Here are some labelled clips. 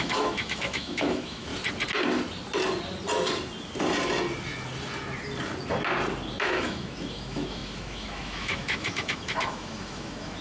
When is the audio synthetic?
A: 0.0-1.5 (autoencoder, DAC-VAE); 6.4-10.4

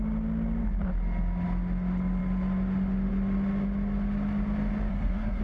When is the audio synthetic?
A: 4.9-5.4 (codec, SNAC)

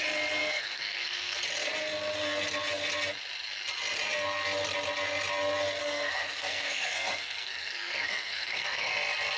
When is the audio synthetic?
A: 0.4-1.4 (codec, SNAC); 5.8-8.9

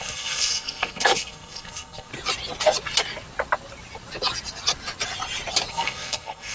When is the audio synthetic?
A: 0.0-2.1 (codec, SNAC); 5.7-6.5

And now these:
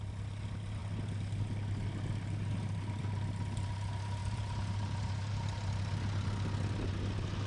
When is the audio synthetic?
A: none

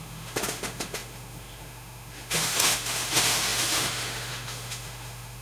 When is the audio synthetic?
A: 0.0-5.4 (autoencoder, DAC-VAE)

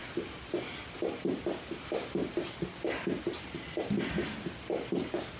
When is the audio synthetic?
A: none